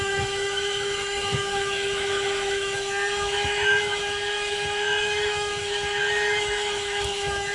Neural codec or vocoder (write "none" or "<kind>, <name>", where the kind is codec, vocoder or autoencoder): autoencoder, DAC-VAE